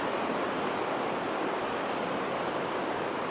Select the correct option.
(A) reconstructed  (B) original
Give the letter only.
B